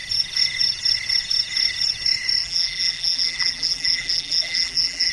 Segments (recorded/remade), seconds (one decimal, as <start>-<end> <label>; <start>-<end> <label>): 0.0-2.4 recorded; 2.4-5.1 remade